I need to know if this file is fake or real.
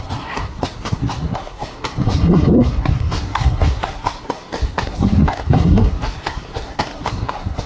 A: fake